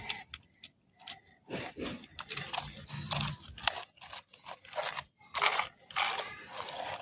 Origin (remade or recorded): recorded